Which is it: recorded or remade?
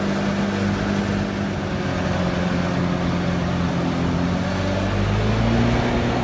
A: recorded